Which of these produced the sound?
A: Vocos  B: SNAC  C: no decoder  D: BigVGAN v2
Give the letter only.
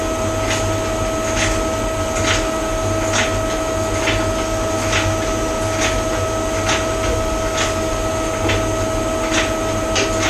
C